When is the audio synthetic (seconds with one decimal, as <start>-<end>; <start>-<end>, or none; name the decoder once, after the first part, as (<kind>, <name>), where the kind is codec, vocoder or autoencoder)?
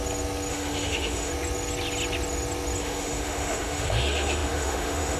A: 0.5-1.3 (autoencoder, DAC-VAE); 2.8-5.2